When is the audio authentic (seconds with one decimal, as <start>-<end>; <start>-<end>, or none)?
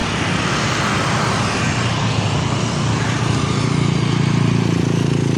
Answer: 0.0-5.4